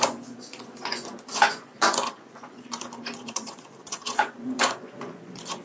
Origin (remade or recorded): remade